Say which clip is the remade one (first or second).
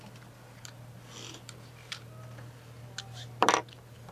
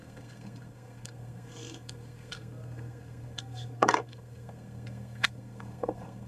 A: second